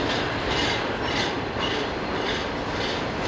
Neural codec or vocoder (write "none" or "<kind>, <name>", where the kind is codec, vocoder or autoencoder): none